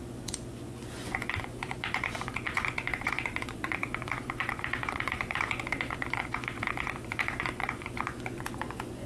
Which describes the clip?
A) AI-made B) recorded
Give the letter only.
A